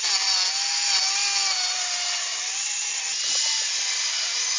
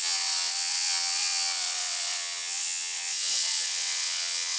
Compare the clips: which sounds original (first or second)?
first